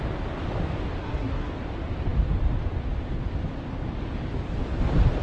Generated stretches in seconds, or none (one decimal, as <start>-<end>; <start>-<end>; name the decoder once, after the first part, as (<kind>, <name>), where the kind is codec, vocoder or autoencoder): 1.0-1.5 (codec, SNAC)